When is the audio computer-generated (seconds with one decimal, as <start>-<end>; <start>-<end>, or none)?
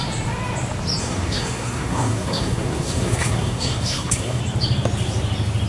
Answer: 1.0-4.4